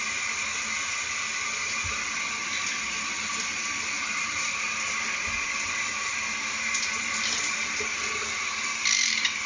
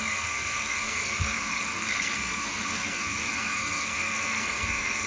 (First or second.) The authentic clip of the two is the first